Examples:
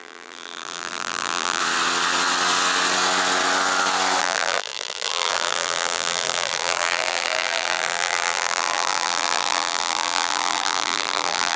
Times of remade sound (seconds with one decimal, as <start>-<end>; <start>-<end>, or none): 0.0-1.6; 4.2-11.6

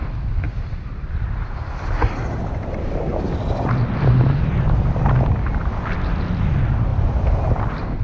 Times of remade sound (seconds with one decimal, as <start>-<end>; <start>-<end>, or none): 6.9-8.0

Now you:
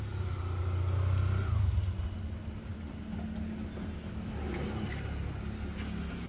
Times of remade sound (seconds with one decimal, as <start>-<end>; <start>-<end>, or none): none

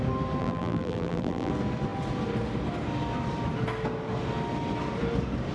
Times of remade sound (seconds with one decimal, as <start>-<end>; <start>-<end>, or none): 0.4-1.5

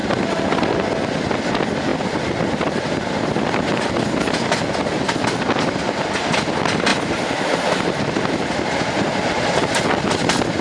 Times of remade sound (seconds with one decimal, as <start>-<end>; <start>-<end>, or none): 0.0-1.0; 1.9-4.6

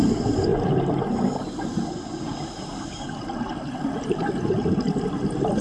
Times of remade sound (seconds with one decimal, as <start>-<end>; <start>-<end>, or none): 0.0-0.5; 3.2-5.6

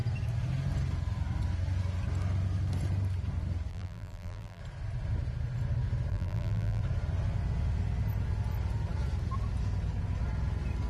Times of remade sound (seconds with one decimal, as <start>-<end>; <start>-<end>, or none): 3.7-4.6; 6.1-6.8

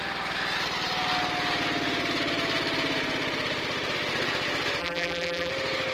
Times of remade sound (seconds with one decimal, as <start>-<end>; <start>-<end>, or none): 4.8-5.5